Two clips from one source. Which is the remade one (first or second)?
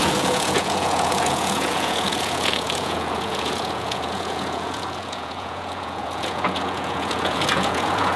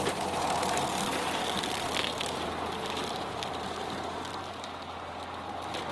first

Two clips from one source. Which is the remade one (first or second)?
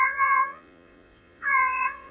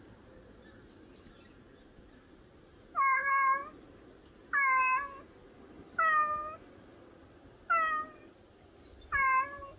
first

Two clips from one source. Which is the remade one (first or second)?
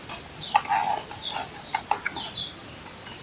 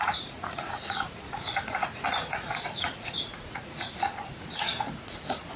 second